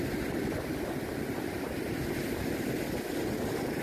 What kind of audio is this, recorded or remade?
recorded